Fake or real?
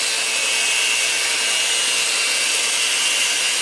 real